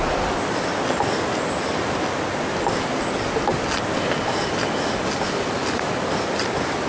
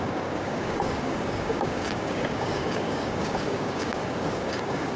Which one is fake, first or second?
second